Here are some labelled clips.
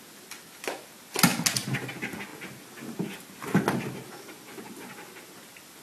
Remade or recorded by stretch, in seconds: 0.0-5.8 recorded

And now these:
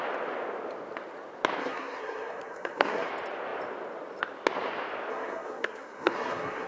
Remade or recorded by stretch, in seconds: 0.0-1.6 recorded; 1.6-3.1 remade; 3.1-5.1 recorded; 5.1-6.7 remade

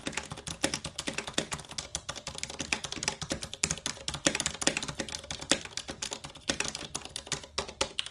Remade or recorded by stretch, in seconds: 0.0-8.1 recorded

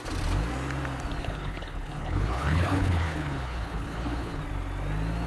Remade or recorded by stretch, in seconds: 0.0-1.2 recorded; 1.2-4.4 remade; 4.4-5.3 recorded

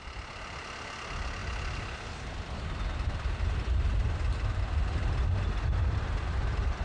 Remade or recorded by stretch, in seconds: 0.0-6.8 recorded

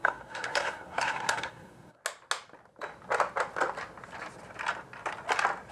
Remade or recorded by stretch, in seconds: 0.0-2.0 remade; 2.0-5.7 recorded

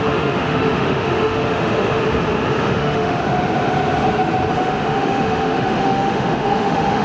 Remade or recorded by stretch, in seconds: 0.0-2.0 remade; 2.0-2.6 recorded; 2.6-3.2 remade; 3.2-4.5 recorded; 4.5-7.0 remade